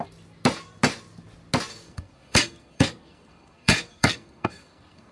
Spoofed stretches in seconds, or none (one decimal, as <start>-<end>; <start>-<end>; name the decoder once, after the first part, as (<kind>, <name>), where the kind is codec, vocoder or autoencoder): 1.7-5.1 (codec, SNAC)